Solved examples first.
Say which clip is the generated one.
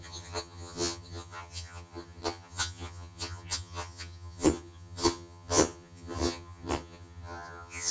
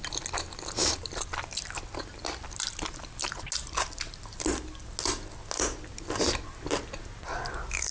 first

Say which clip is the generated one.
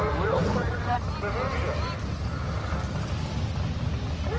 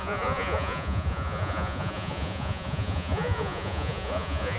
second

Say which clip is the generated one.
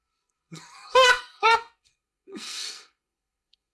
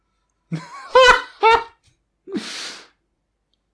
first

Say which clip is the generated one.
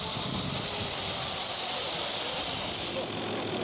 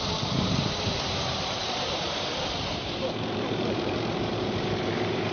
second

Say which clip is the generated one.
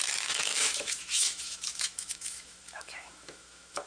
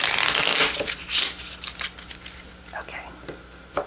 first